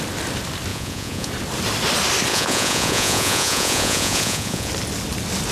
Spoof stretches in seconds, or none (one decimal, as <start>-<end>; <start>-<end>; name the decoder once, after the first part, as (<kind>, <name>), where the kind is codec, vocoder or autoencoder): 0.7-1.3 (vocoder, Vocos); 2.3-4.7